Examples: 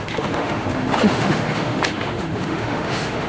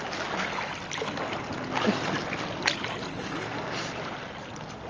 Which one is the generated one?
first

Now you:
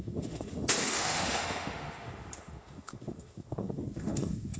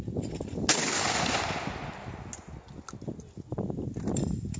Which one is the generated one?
first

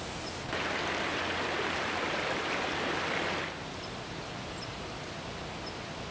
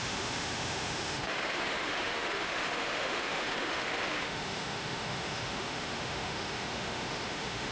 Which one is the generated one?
second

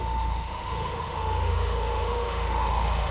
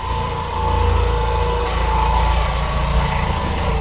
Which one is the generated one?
first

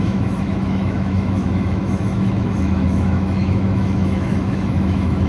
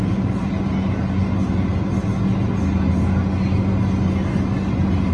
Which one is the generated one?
first